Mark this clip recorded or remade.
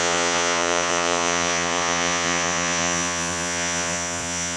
remade